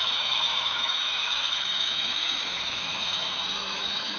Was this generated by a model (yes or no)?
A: yes